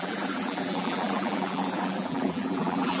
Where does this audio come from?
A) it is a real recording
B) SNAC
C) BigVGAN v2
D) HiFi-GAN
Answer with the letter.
C